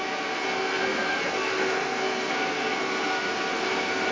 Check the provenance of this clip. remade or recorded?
remade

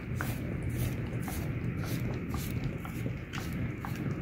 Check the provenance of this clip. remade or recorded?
remade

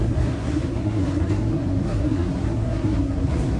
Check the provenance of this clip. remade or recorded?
remade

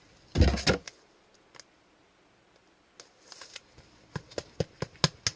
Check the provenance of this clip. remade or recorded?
recorded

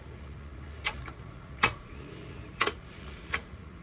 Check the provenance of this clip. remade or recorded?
remade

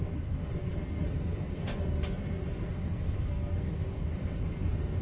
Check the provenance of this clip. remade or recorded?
remade